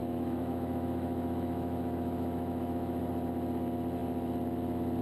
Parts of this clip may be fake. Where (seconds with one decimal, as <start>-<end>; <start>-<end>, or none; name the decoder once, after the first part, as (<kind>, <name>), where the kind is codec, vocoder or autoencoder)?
0.0-3.0 (autoencoder, DAC-VAE)